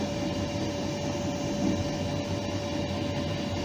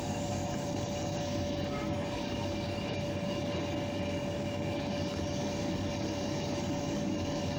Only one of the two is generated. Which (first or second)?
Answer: second